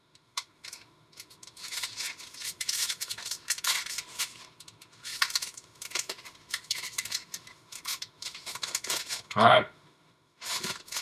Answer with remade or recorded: remade